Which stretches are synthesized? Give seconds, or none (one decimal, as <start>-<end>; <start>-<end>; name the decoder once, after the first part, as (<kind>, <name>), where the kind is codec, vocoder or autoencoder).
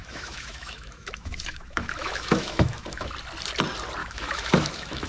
0.0-3.1 (autoencoder, DAC-VAE); 4.0-5.1